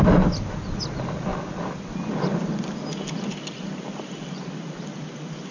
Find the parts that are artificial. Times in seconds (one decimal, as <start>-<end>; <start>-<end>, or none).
none